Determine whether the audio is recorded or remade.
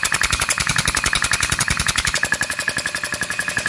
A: recorded